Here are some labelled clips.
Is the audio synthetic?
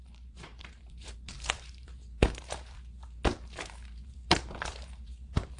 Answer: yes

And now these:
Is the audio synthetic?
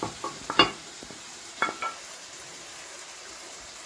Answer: yes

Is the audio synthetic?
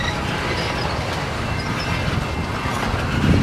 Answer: no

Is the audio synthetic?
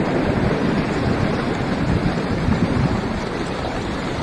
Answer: yes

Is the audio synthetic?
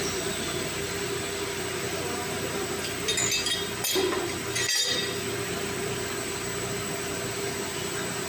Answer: no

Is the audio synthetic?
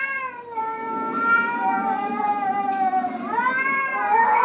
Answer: yes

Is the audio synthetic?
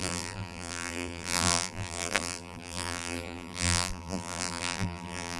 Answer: yes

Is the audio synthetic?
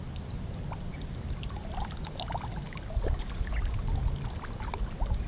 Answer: no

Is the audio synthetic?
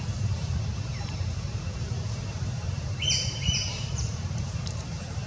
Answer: yes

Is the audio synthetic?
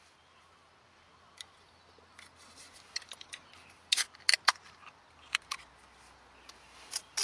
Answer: yes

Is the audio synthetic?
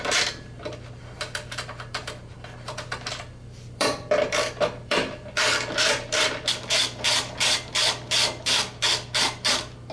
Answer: yes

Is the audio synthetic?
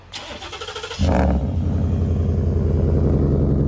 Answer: no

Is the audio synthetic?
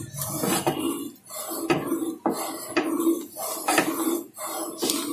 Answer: no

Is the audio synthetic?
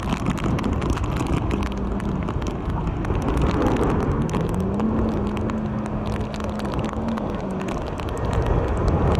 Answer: no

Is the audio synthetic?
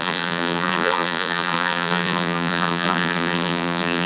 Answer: yes